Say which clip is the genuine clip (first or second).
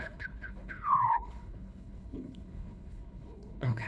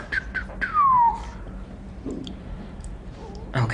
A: second